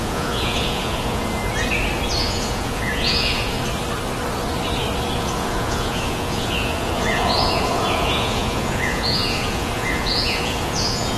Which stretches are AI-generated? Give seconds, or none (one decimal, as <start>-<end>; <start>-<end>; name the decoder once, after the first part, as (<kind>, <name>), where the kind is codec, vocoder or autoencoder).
0.0-1.4 (vocoder, Vocos); 2.2-3.6; 5.2-11.2